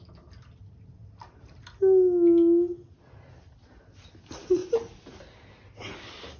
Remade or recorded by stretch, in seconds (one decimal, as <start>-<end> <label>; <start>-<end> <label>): 0.0-6.4 recorded